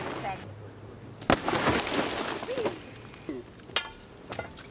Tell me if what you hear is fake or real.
real